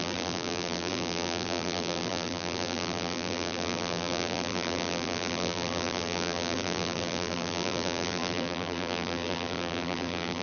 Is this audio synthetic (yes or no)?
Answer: yes